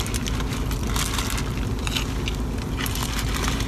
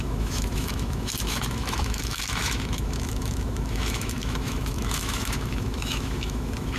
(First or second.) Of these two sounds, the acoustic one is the first